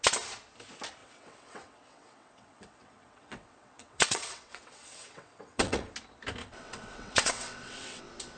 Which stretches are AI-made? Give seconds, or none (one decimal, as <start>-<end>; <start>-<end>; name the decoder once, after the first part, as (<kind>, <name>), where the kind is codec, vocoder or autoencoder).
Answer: 1.0-5.9 (vocoder, WaveNeXt); 6.4-8.0